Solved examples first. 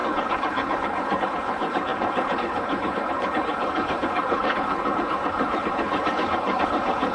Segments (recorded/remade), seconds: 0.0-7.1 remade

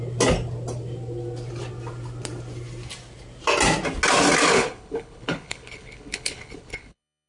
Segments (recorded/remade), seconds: 0.0-4.5 recorded; 4.5-7.3 remade

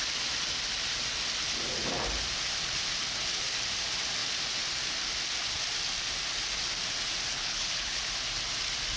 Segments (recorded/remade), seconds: 0.0-7.3 recorded; 7.3-8.0 remade; 8.0-9.0 recorded

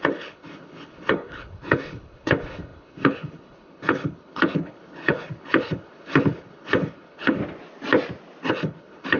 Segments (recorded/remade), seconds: 0.0-7.4 remade; 7.4-8.5 recorded; 8.5-9.2 remade

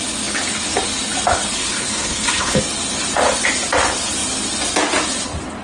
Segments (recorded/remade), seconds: 0.0-1.6 recorded; 1.6-2.6 remade; 2.6-5.6 recorded

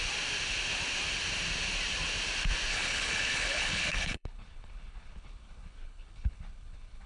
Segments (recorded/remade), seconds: 0.0-2.7 recorded; 2.7-7.1 remade

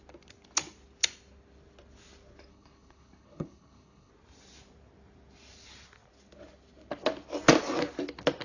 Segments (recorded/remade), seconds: 0.0-2.5 recorded; 2.5-4.1 remade; 4.1-8.4 recorded

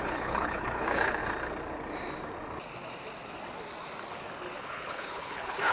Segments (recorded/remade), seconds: 0.0-1.2 remade; 1.2-4.6 recorded; 4.6-5.7 remade